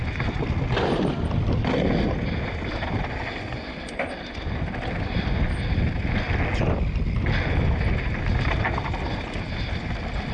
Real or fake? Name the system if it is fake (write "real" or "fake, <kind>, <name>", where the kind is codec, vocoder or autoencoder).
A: real